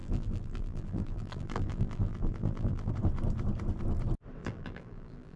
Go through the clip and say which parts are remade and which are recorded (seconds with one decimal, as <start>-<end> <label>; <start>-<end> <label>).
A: 0.0-2.9 remade; 2.9-4.4 recorded; 4.4-5.4 remade